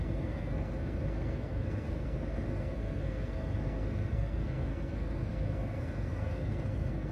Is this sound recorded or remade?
remade